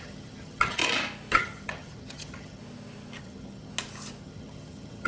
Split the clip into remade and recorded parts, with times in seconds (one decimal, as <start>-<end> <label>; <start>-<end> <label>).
0.0-0.8 remade; 0.8-1.3 recorded; 1.3-2.6 remade; 2.6-3.2 recorded; 3.2-3.7 remade; 3.7-4.2 recorded; 4.2-5.1 remade